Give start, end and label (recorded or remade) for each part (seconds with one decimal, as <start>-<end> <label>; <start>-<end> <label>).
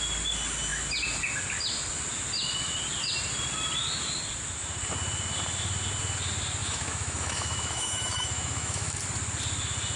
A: 0.0-6.6 recorded; 6.6-9.0 remade; 9.0-10.0 recorded